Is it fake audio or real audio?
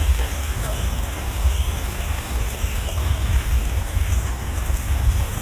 fake